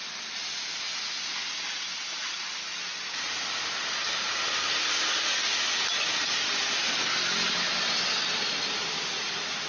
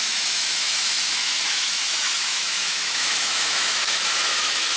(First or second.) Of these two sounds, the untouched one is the first